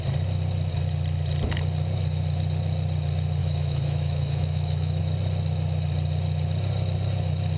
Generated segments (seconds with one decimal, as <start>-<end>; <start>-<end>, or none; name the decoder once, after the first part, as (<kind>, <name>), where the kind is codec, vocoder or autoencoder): 3.4-5.0 (autoencoder, DAC-VAE)

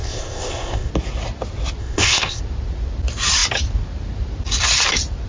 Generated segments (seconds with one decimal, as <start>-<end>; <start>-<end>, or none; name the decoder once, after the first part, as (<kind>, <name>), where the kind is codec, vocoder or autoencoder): 0.0-0.9 (codec, ZipCodec); 1.8-2.4

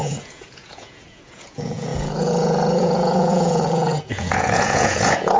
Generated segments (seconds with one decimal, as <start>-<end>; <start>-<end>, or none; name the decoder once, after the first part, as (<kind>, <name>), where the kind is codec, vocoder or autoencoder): 0.0-5.4 (vocoder, Vocos)

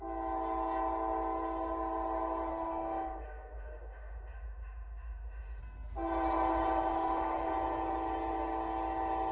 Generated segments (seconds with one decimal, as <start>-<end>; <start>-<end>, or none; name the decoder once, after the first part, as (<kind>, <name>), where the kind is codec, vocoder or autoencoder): 2.5-5.6 (autoencoder, DAC-VAE); 6.9-7.5